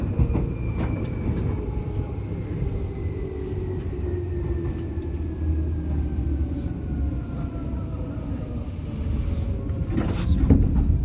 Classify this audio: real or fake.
real